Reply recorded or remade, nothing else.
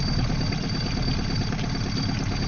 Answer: recorded